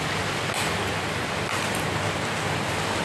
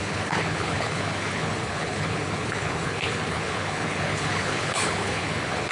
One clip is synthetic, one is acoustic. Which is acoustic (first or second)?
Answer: first